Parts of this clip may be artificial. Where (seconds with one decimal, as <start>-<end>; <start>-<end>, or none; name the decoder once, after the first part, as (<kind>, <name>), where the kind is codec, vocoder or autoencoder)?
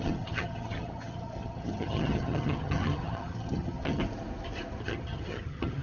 0.0-4.0 (vocoder, HiFi-GAN); 4.8-5.8